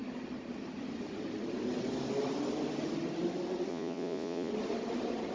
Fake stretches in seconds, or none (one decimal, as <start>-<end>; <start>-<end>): 3.7-4.5